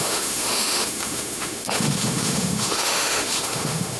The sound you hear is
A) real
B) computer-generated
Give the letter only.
B